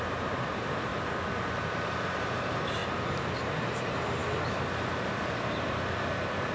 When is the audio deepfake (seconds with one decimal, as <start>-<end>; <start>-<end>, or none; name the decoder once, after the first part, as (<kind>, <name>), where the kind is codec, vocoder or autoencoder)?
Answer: 0.0-0.9 (vocoder, BigVGAN v2); 1.4-2.8; 3.7-4.2; 5.5-6.5